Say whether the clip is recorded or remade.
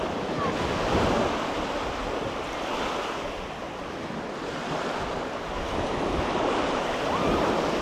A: recorded